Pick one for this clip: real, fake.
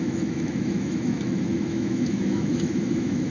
fake